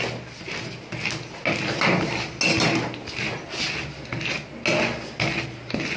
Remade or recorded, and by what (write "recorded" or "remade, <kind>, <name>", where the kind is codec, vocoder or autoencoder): recorded